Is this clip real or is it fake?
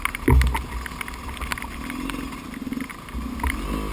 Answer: real